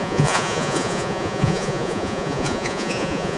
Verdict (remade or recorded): remade